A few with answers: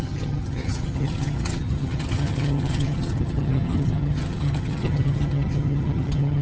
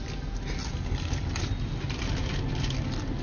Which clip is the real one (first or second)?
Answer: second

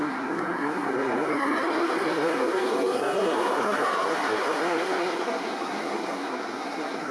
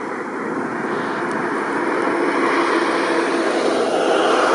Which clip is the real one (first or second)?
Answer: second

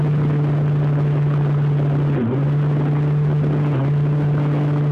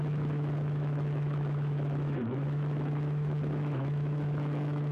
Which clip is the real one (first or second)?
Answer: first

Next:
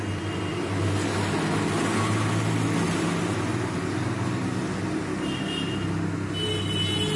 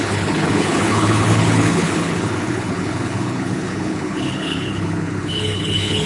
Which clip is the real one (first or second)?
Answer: first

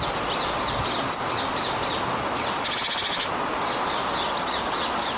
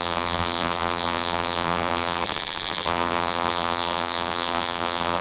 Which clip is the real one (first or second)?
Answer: first